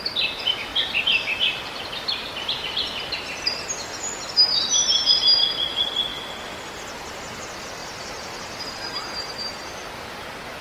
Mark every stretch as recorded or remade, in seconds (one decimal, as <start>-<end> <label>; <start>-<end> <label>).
0.0-10.6 recorded